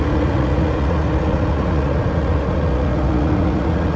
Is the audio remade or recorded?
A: remade